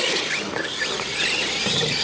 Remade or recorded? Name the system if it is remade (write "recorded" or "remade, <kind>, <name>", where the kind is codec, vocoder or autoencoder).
recorded